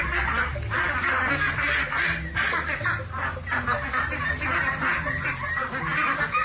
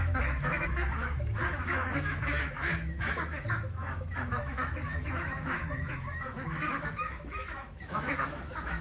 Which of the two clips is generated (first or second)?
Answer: second